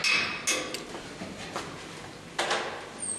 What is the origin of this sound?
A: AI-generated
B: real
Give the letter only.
B